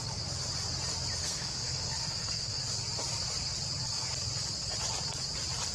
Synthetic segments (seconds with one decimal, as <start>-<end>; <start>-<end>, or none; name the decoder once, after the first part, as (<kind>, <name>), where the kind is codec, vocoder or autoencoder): 1.2-2.6 (codec, SNAC)